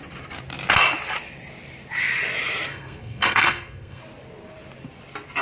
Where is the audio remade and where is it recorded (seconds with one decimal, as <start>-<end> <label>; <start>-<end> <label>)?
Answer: 0.0-2.7 recorded; 2.7-4.0 remade; 4.0-5.4 recorded